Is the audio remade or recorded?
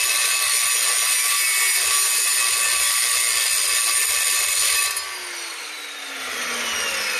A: recorded